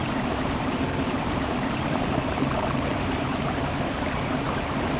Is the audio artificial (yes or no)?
yes